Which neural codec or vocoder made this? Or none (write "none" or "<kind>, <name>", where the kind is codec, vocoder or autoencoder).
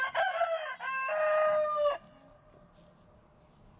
none